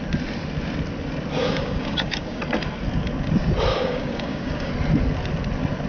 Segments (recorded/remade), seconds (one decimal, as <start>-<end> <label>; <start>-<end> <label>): 0.0-1.4 recorded; 1.4-2.4 remade; 2.4-3.7 recorded; 3.7-4.7 remade; 4.7-5.9 recorded